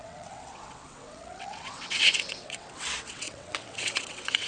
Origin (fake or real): fake